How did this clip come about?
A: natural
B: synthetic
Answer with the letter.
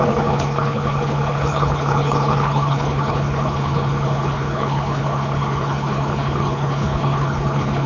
B